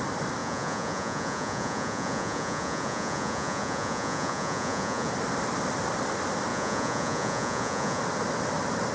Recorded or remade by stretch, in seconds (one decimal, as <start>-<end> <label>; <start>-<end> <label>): 0.0-0.4 recorded; 0.4-5.1 remade; 5.1-6.5 recorded; 6.5-8.0 remade; 8.0-8.9 recorded